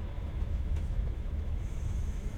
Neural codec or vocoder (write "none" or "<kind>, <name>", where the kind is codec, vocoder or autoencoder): autoencoder, DAC-VAE